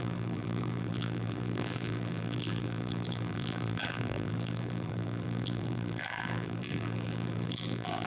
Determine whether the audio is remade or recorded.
remade